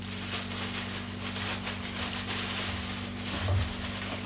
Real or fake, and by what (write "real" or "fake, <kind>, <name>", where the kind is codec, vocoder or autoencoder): real